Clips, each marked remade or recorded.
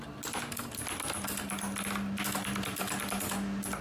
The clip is recorded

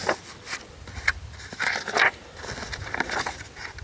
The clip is recorded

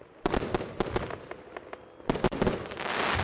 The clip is recorded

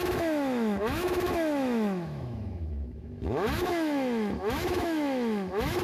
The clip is remade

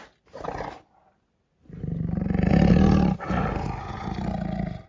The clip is recorded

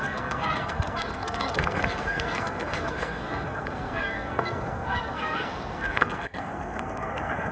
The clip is remade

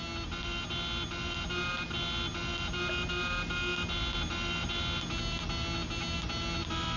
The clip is recorded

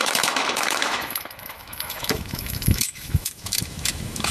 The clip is remade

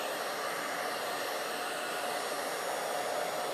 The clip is recorded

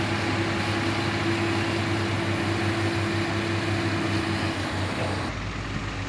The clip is recorded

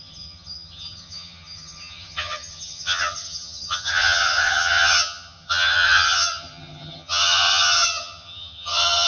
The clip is remade